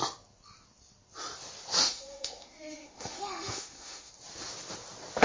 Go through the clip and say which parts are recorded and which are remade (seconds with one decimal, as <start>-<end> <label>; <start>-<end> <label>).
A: 0.0-1.8 recorded; 1.8-4.1 remade; 4.1-5.2 recorded